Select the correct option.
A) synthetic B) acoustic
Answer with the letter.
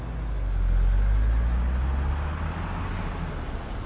B